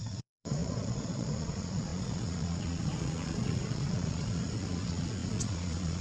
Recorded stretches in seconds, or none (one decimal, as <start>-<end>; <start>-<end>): none